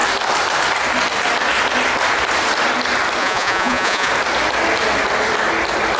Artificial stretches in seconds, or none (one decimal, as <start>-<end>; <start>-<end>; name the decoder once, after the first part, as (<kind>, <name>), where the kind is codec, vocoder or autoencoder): 3.2-4.1 (vocoder, Vocos)